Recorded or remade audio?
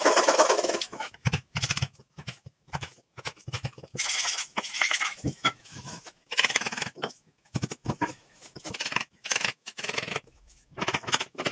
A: remade